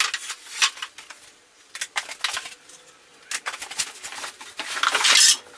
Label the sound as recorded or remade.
recorded